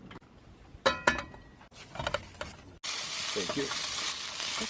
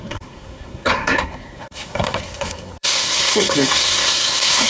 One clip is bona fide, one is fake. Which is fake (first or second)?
second